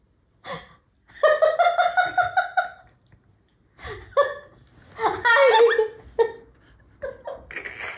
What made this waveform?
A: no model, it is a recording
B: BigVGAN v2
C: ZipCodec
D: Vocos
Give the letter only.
A